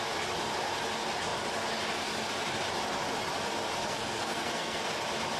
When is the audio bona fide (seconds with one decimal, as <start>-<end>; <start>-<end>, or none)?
0.0-3.8; 5.0-5.4